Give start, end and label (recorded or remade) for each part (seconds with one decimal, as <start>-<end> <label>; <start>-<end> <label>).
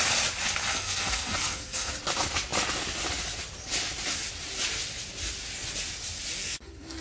0.0-0.7 recorded; 0.7-1.9 remade; 1.9-6.4 recorded; 6.4-7.0 remade